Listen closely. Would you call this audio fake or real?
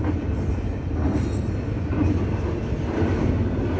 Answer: real